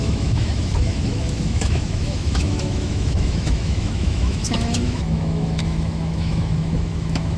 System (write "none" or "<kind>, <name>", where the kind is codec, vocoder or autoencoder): autoencoder, DAC-VAE